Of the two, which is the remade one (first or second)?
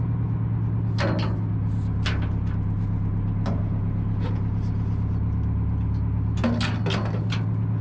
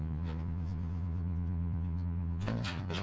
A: second